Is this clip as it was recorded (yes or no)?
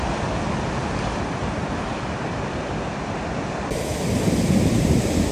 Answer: yes